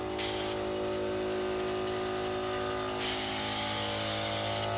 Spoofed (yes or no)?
no